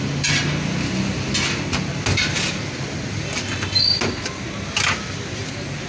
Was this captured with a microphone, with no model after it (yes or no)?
yes